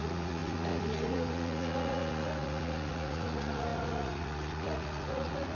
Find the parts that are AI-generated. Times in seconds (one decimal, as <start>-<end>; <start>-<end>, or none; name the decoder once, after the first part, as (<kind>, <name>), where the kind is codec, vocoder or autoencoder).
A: 0.0-5.5 (vocoder, Vocos)